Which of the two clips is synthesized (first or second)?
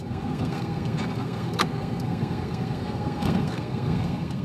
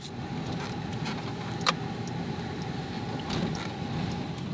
first